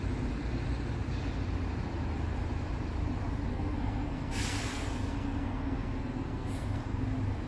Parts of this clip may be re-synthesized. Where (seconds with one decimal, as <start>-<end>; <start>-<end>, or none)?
3.5-7.0